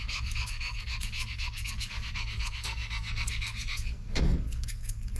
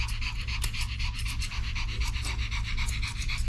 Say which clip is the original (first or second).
second